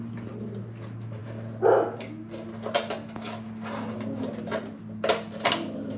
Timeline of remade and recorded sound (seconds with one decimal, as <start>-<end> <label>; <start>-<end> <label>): 0.0-6.0 recorded